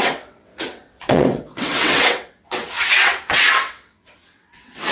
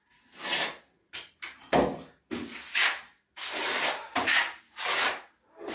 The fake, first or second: first